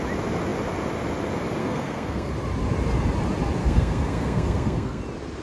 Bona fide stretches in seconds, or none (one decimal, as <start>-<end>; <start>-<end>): 0.0-1.6; 2.3-3.6; 5.0-5.4